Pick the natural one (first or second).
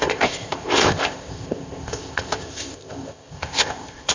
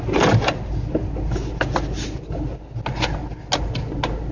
second